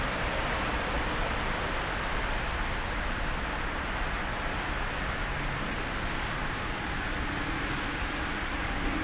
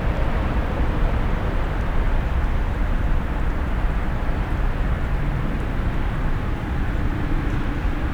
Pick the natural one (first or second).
first